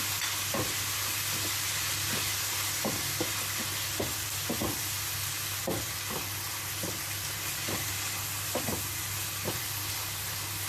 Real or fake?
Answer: real